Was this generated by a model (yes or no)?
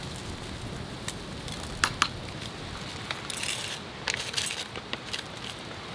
no